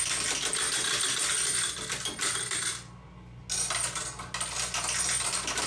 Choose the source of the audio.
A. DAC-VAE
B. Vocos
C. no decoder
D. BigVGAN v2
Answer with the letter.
C